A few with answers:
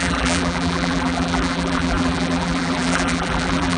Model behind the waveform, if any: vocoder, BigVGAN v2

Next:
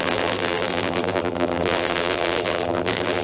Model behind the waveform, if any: vocoder, BigVGAN v2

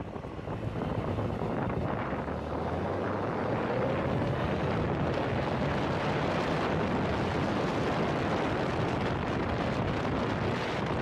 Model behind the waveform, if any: none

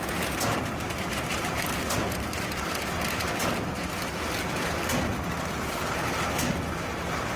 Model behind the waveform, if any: none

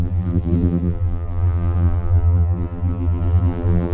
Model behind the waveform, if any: vocoder, BigVGAN v2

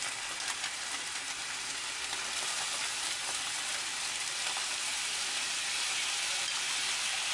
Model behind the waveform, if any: vocoder, BigVGAN v2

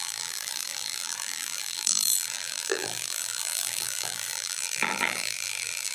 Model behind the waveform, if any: vocoder, BigVGAN v2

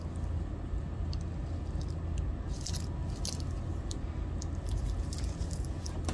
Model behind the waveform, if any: none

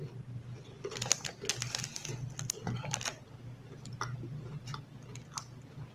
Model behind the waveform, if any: none